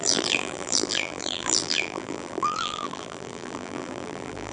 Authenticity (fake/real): fake